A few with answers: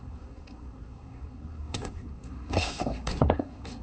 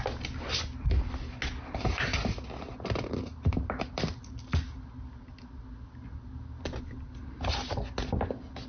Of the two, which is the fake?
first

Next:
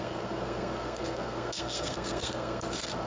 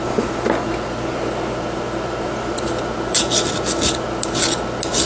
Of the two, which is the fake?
first